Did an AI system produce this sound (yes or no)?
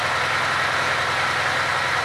no